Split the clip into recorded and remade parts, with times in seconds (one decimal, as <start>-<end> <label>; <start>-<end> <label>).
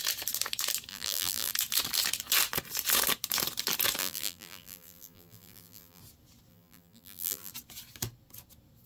0.0-0.9 recorded; 0.9-1.5 remade; 1.5-4.0 recorded; 4.0-6.0 remade; 6.0-6.5 recorded; 6.5-7.5 remade; 7.5-8.9 recorded